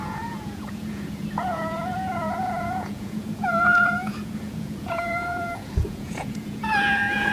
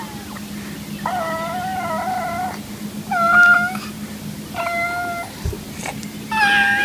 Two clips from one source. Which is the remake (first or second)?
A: first